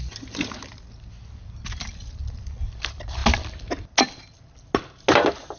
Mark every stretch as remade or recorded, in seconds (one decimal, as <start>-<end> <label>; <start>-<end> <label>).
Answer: 0.0-5.6 recorded

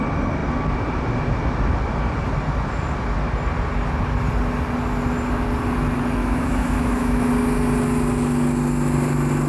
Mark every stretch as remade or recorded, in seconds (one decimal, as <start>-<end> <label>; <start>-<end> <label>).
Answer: 0.0-6.2 recorded; 6.2-7.3 remade; 7.3-9.5 recorded

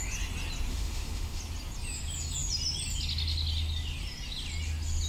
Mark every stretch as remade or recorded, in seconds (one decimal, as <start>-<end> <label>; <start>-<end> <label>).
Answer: 0.0-0.7 recorded; 0.7-1.4 remade; 1.4-5.1 recorded